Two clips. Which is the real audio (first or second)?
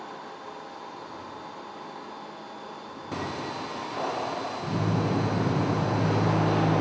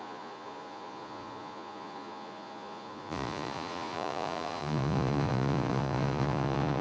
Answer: first